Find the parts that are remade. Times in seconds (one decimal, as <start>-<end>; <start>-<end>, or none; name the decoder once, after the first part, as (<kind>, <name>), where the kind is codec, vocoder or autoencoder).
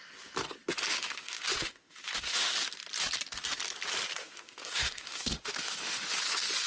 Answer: 0.9-2.5 (autoencoder, DAC-VAE); 4.2-6.1